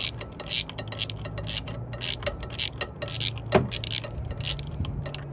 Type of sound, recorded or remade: recorded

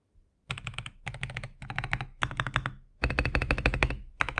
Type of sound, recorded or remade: remade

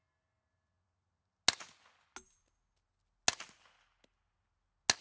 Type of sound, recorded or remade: recorded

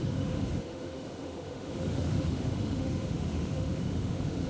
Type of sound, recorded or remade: remade